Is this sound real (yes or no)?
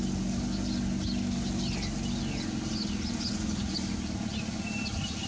yes